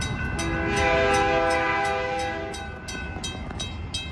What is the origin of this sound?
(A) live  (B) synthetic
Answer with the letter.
A